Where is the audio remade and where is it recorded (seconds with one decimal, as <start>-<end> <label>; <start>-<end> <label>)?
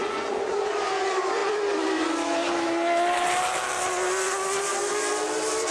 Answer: 0.0-0.7 remade; 0.7-5.7 recorded